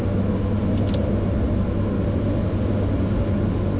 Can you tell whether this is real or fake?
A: real